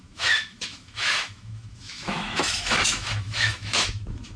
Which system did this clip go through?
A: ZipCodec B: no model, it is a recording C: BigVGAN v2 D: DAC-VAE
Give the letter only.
D